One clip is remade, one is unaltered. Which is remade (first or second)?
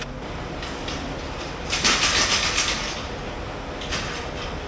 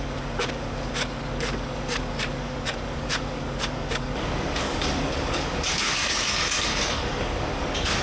second